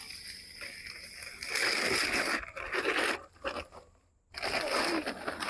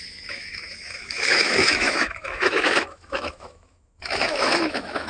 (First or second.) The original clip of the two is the first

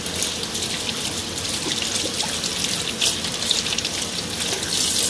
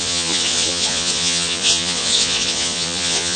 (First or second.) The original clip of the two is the first